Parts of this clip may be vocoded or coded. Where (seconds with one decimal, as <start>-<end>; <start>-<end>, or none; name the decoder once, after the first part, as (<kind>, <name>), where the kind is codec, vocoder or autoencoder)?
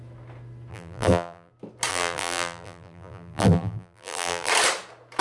0.7-1.5 (vocoder, BigVGAN v2); 1.9-4.5